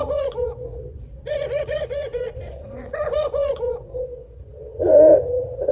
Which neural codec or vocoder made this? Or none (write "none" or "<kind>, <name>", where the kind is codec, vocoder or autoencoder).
vocoder, Vocos